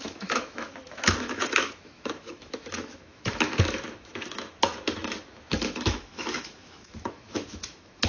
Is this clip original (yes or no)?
no